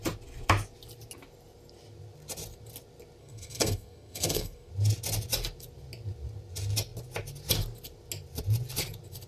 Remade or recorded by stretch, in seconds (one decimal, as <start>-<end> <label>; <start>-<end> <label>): 0.0-3.2 recorded; 3.2-4.7 remade; 4.7-9.3 recorded